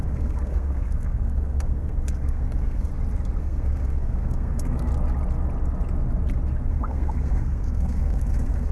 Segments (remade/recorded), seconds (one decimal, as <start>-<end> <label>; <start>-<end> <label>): 0.0-2.9 remade; 2.9-3.4 recorded; 3.4-4.9 remade; 4.9-6.7 recorded; 6.7-8.7 remade